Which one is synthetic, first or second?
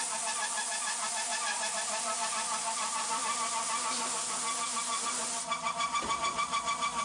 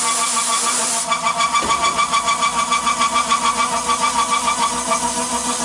first